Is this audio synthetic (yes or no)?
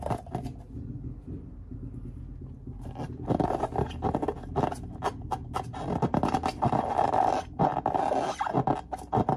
no